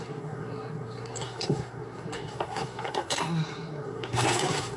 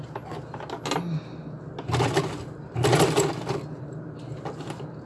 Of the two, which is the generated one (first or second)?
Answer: first